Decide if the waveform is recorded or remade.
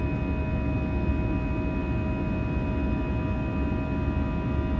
recorded